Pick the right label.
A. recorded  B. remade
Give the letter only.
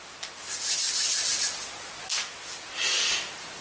A